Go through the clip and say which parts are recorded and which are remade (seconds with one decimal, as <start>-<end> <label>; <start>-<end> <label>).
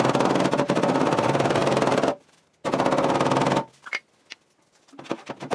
0.0-5.5 recorded